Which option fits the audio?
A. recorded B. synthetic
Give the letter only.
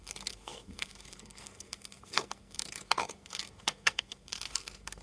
B